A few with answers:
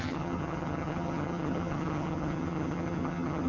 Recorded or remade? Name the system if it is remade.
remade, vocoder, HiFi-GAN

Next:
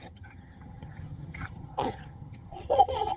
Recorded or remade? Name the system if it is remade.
remade, vocoder, HiFi-GAN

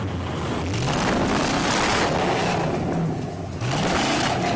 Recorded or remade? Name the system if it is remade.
recorded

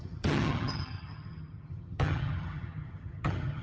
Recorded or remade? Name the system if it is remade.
remade, vocoder, HiFi-GAN